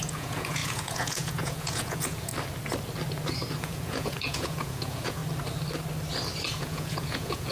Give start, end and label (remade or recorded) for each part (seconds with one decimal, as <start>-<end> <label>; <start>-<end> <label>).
0.0-2.3 remade; 2.3-3.6 recorded; 3.6-5.2 remade; 5.2-6.5 recorded; 6.5-7.5 remade